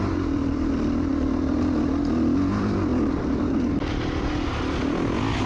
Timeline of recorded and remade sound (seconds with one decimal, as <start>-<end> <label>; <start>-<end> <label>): 0.0-2.9 recorded; 2.9-4.8 remade; 4.8-5.5 recorded